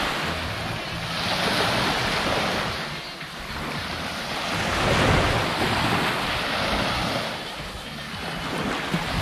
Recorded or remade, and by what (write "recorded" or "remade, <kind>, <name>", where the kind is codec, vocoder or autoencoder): recorded